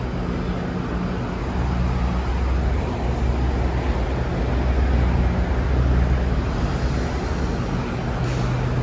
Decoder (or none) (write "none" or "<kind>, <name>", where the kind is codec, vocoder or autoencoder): none